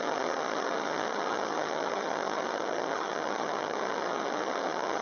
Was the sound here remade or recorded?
remade